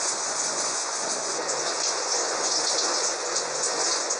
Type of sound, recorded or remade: remade